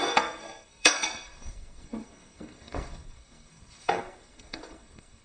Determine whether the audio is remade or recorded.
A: remade